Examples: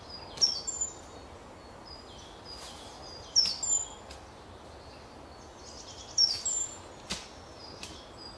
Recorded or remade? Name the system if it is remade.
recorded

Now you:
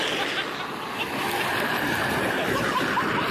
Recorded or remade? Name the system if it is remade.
remade, vocoder, BigVGAN v2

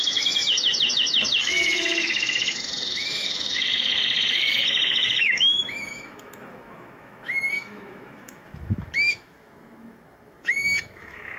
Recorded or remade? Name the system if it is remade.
remade, autoencoder, DAC-VAE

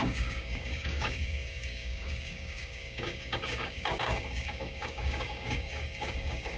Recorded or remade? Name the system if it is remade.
remade, codec, DAC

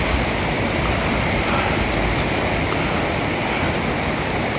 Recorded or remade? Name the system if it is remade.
recorded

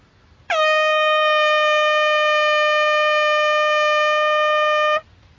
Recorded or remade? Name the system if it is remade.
recorded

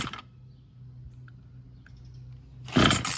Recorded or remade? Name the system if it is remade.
recorded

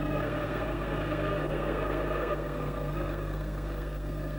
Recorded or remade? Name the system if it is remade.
remade, codec, SNAC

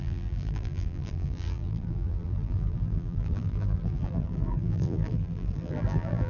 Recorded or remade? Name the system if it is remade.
remade, vocoder, BigVGAN v2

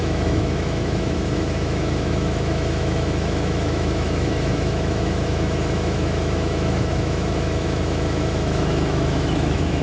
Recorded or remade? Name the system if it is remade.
remade, autoencoder, DAC-VAE